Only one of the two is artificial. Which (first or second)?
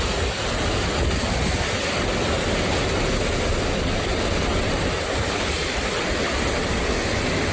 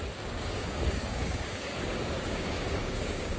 second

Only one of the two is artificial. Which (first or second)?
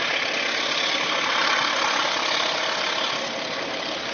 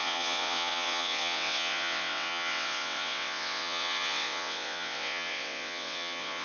second